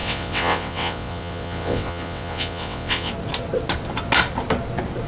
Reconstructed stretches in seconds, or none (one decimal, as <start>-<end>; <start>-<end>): 0.0-3.1